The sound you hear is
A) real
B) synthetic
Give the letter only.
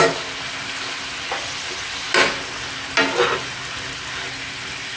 A